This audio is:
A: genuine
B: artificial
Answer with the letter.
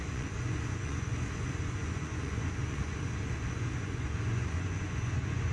B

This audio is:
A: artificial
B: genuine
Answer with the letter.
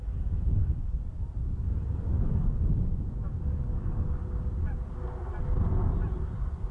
B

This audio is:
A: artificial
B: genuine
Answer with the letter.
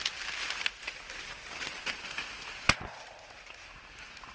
B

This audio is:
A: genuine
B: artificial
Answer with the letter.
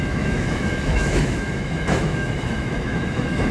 B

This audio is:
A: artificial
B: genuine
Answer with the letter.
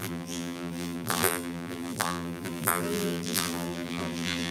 A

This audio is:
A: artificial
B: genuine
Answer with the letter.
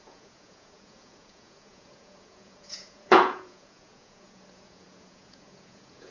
A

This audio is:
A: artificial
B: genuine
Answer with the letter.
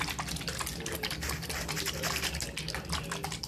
B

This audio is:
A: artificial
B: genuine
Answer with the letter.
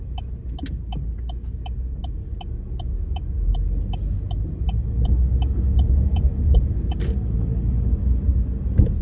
B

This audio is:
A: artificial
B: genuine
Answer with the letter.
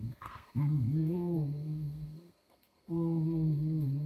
A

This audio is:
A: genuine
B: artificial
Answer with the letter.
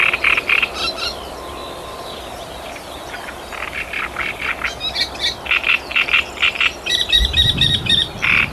A